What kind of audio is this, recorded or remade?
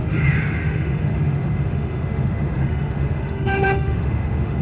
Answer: remade